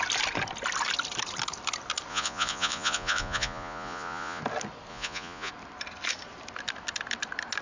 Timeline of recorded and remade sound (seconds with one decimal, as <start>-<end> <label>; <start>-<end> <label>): 0.0-2.1 recorded; 2.1-4.4 remade; 4.4-4.9 recorded; 4.9-5.5 remade; 5.5-7.6 recorded